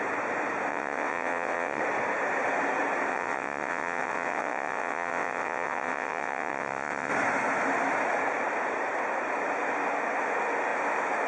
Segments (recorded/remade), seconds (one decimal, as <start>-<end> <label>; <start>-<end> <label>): 0.0-0.7 recorded; 0.7-1.8 remade; 1.8-3.1 recorded; 3.1-7.1 remade; 7.1-11.3 recorded